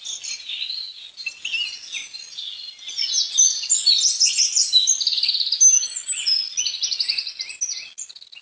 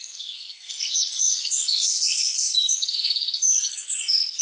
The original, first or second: first